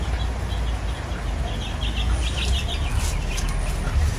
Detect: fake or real real